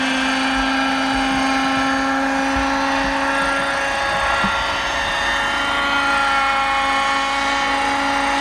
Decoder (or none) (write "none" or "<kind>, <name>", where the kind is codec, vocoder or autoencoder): none